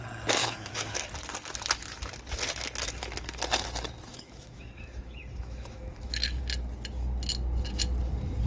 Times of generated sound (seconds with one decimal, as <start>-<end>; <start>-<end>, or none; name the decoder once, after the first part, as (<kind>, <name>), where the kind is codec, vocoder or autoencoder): 0.4-1.1 (autoencoder, DAC-VAE); 4.1-6.4